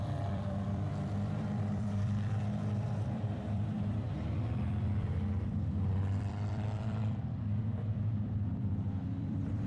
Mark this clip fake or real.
fake